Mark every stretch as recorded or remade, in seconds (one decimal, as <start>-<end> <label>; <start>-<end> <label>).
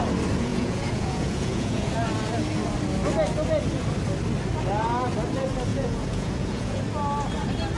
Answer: 0.0-0.5 recorded; 0.5-1.9 remade; 1.9-5.7 recorded; 5.7-6.8 remade; 6.8-7.8 recorded